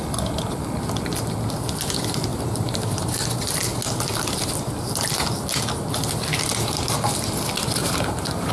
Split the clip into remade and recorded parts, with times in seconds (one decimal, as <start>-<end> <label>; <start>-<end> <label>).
0.0-2.3 recorded; 2.3-3.6 remade; 3.6-7.8 recorded; 7.8-8.5 remade